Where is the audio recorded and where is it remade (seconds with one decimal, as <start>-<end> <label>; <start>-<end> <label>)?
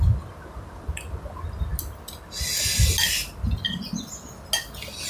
0.0-5.1 recorded